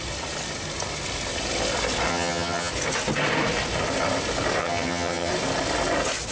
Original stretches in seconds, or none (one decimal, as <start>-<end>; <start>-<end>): 0.0-2.1; 2.7-4.6; 5.3-6.3